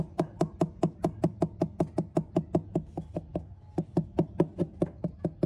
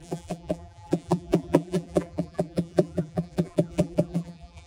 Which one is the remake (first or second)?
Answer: second